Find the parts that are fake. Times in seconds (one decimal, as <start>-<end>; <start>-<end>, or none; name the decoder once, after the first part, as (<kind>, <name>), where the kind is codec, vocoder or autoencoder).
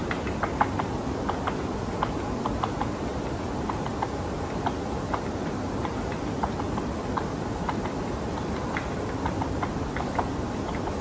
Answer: none